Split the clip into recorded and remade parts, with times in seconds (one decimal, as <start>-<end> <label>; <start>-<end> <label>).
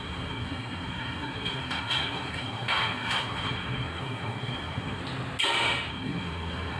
0.0-5.0 remade; 5.0-5.9 recorded; 5.9-6.8 remade